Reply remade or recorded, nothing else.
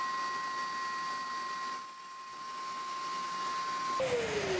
recorded